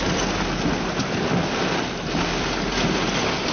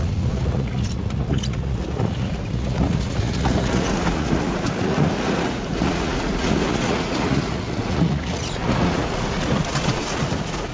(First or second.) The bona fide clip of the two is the first